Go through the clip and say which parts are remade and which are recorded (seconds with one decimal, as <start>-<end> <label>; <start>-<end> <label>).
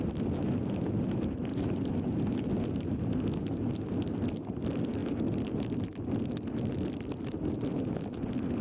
0.0-1.5 recorded; 1.5-2.5 remade; 2.5-8.6 recorded